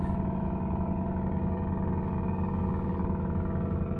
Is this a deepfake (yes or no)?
yes